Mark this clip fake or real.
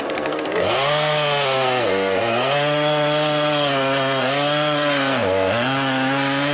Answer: fake